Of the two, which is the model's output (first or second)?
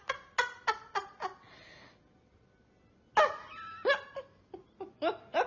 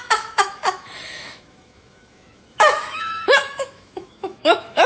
second